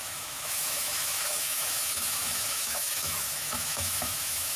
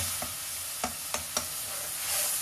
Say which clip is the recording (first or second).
second